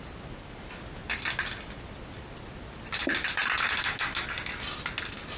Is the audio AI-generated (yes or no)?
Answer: no